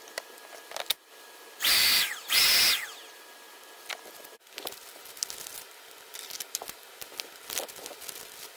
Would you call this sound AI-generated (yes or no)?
no